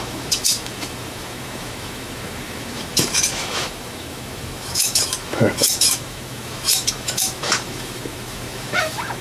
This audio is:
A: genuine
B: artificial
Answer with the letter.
B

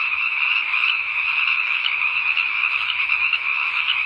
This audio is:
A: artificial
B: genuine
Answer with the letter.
A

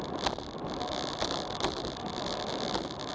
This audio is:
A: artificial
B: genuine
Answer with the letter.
B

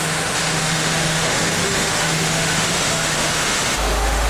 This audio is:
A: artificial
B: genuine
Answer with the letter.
A